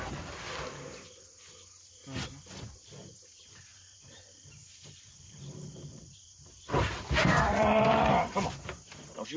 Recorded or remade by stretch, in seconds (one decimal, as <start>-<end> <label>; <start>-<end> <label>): 0.0-3.7 recorded; 3.7-8.5 remade; 8.5-9.4 recorded